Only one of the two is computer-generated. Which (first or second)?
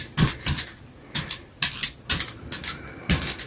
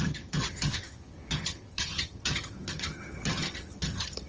second